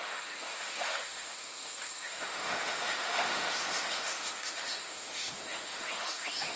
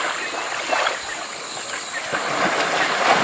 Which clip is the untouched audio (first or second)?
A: second